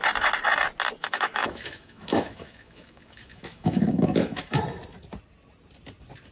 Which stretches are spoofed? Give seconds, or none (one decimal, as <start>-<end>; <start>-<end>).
1.0-4.6